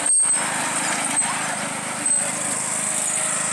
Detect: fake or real real